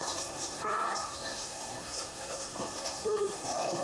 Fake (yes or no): yes